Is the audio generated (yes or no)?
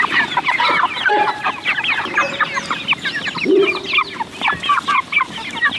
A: no